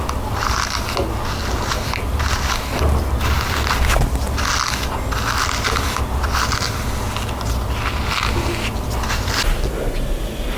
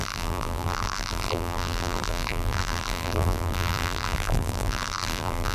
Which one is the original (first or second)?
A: first